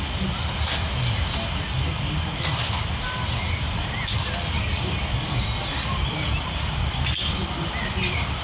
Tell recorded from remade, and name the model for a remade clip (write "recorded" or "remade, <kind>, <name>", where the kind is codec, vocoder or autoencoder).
recorded